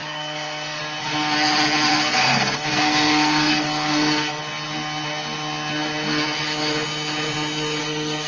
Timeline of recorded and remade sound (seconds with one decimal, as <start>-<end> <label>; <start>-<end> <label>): 0.0-0.8 remade; 0.8-1.9 recorded; 1.9-4.4 remade; 4.4-7.8 recorded; 7.8-8.3 remade